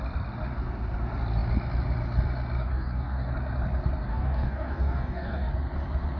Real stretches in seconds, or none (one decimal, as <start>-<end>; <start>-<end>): 0.0-2.6; 3.3-4.1; 5.5-6.2

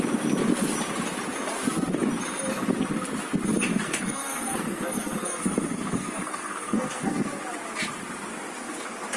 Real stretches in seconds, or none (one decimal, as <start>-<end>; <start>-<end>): 0.0-3.7; 7.4-9.2

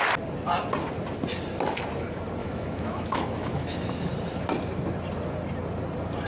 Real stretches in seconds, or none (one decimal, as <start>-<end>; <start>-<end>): 0.0-2.4; 4.1-6.3